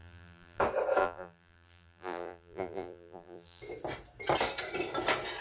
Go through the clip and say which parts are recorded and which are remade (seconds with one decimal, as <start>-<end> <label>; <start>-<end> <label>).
0.0-0.6 remade; 0.6-1.0 recorded; 1.0-3.6 remade; 3.6-5.4 recorded